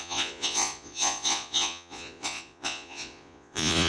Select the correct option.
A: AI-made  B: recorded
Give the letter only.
A